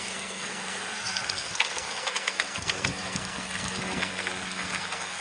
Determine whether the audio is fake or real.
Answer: fake